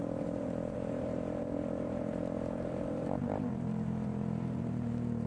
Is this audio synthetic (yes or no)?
yes